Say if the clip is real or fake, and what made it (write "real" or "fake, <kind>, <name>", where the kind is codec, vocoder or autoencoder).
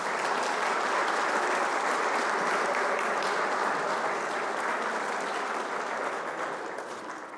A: real